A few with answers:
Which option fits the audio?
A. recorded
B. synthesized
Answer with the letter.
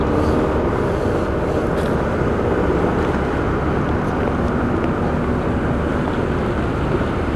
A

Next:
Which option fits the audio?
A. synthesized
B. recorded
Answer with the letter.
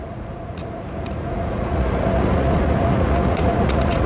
A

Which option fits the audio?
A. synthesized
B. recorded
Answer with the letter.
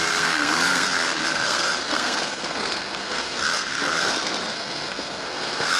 A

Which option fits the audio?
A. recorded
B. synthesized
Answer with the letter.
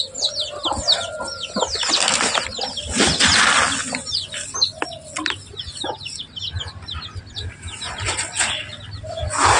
A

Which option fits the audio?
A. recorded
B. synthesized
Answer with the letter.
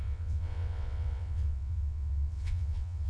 B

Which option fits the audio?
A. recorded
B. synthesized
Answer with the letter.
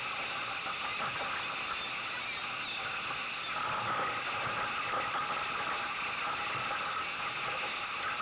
A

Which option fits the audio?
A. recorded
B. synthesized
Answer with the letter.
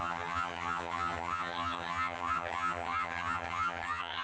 B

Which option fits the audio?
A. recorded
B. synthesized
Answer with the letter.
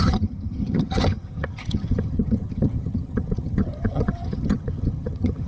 B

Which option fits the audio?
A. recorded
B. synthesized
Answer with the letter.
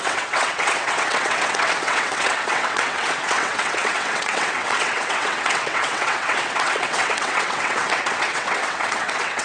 B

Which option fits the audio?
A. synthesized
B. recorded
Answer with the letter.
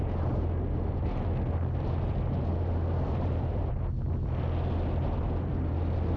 B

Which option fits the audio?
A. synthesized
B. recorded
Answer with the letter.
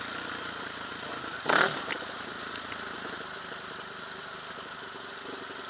B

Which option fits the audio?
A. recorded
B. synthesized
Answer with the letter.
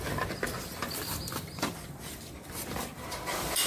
B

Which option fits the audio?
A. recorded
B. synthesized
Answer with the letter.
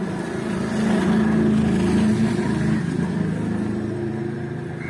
A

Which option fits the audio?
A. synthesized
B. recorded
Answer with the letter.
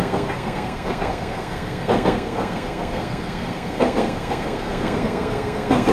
A